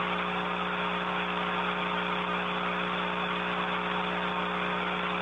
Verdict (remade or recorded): recorded